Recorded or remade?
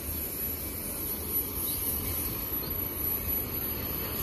recorded